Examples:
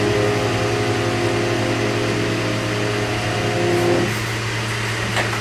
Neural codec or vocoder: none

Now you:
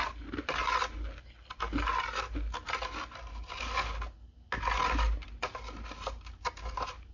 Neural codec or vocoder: none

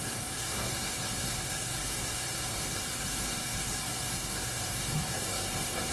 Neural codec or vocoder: codec, SNAC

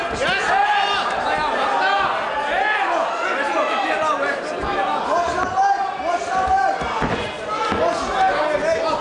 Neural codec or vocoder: none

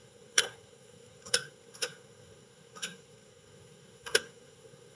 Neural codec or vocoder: codec, SNAC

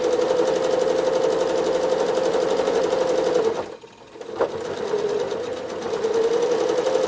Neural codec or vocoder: none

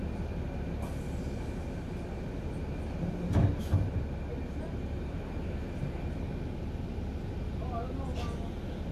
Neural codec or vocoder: none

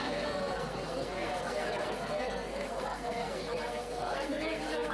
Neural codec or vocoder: codec, SNAC